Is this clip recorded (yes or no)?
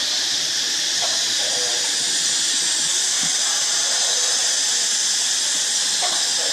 yes